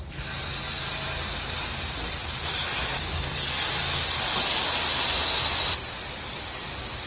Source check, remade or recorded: recorded